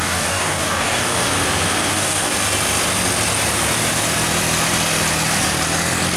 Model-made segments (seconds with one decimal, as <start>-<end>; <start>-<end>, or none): 0.0-1.3; 1.9-2.3